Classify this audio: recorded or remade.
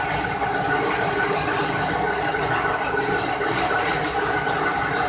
recorded